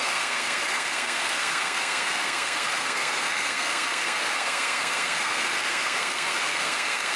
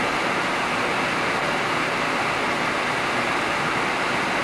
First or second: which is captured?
second